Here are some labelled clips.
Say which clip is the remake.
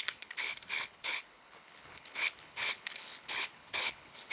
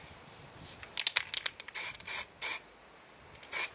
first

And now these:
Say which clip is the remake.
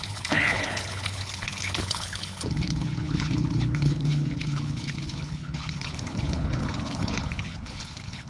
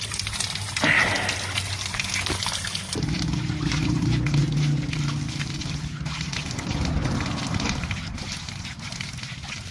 first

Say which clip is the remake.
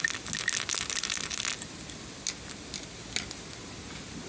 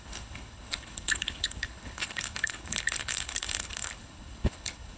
second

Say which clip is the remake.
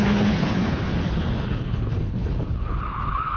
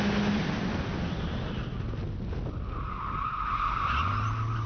first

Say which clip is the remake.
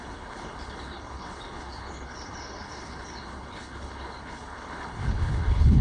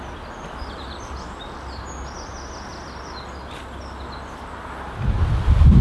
first